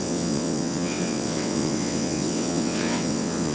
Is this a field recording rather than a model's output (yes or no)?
no